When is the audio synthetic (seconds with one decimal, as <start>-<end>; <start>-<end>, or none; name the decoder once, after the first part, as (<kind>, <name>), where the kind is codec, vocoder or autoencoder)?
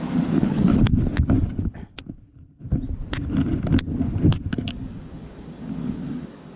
0.0-0.7 (codec, DAC); 4.7-6.6